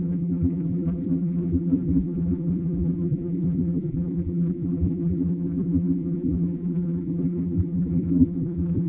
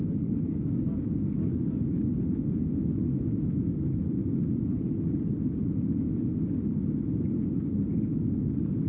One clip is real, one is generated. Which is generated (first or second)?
first